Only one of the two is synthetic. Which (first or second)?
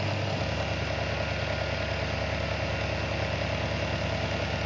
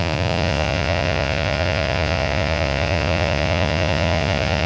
second